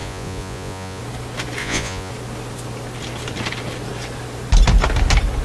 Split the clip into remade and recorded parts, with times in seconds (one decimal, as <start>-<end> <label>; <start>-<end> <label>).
0.0-1.0 remade; 1.0-1.6 recorded; 1.6-2.1 remade; 2.1-5.4 recorded